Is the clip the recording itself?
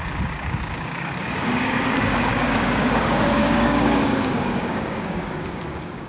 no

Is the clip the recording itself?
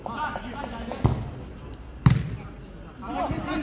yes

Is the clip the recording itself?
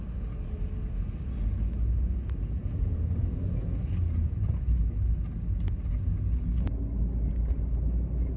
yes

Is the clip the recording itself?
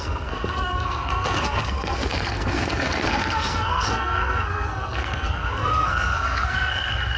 no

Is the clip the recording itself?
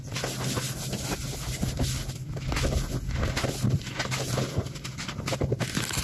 yes